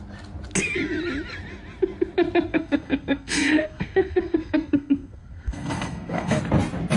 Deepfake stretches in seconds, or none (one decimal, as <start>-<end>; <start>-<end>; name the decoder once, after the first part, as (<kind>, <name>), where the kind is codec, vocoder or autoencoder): 2.5-6.4 (codec, SNAC)